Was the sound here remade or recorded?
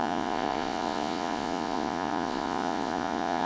remade